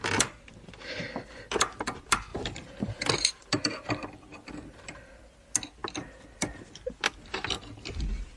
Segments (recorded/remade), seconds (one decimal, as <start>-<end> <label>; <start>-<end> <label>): 0.0-2.3 recorded; 2.3-3.9 remade; 3.9-4.3 recorded; 4.3-4.9 remade; 4.9-8.4 recorded